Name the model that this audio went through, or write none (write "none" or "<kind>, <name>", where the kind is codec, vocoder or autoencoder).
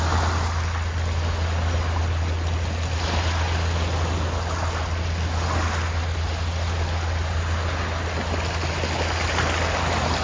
none